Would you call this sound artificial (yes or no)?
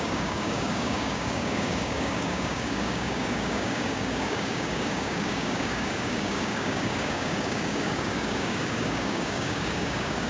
yes